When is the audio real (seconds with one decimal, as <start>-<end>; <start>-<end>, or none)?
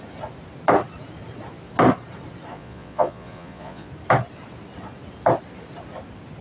0.0-2.5; 3.9-6.4